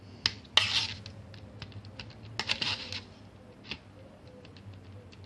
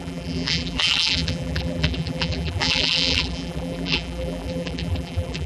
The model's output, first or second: second